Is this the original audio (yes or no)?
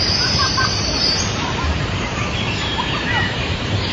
no